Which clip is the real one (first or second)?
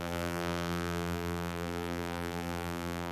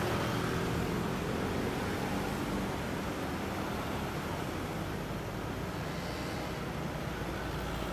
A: second